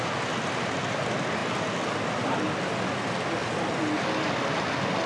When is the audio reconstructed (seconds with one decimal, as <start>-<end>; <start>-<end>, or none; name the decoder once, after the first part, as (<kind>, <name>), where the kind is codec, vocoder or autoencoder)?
none